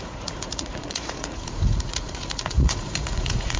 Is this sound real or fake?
fake